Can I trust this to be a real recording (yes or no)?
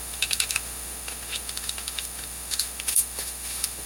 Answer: no